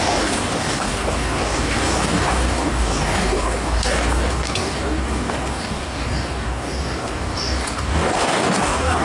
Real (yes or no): no